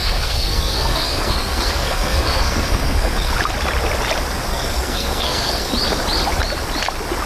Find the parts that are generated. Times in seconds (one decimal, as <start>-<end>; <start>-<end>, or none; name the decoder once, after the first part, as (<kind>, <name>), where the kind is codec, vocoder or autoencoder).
0.0-3.3 (codec, SNAC); 4.5-5.7